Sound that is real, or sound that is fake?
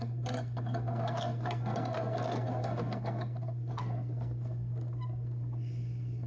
fake